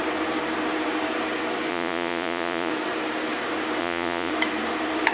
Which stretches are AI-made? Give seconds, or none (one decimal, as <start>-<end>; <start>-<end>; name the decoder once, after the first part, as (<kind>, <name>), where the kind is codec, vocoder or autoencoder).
1.7-2.7 (vocoder, Vocos); 3.8-4.3